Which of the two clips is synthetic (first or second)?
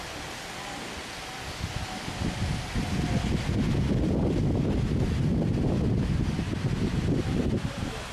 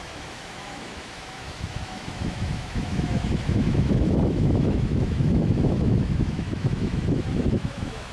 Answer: second